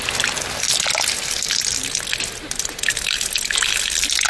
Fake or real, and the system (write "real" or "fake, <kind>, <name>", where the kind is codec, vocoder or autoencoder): real